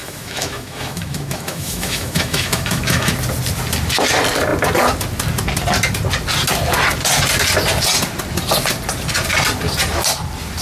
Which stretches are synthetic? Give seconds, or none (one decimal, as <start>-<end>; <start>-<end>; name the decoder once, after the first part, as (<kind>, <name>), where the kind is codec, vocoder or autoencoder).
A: 0.0-3.1 (autoencoder, DAC-VAE)